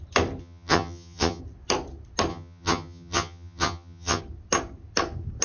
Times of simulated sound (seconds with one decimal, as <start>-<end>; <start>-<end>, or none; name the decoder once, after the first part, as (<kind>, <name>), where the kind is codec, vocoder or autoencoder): 0.4-1.4 (vocoder, HiFi-GAN); 2.3-4.2

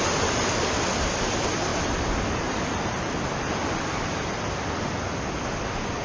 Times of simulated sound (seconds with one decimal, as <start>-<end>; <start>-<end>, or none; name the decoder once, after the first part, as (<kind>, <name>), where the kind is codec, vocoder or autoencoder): none

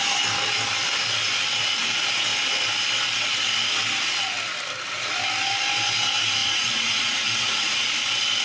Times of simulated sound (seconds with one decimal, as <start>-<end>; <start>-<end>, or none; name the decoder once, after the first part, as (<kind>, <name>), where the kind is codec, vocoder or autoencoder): 6.4-7.9 (vocoder, Vocos)

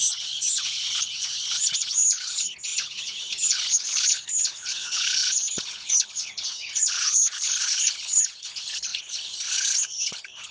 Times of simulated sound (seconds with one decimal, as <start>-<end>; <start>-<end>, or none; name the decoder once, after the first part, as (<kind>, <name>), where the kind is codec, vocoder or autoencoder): 0.0-10.5 (codec, HILCodec)

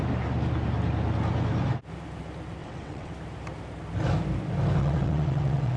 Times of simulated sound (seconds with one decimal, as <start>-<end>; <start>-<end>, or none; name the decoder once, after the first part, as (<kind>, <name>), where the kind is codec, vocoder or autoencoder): 2.6-3.1 (vocoder, WaveNeXt); 4.8-5.8

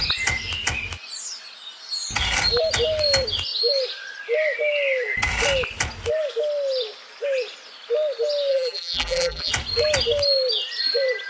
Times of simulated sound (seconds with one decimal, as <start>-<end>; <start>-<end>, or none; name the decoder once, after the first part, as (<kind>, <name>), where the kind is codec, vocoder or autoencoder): 8.5-9.5 (vocoder, BigVGAN v2)

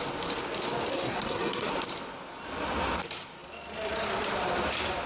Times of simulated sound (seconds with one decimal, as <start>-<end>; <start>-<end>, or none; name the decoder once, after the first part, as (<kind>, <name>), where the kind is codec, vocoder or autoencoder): 0.9-1.7 (codec, SNAC)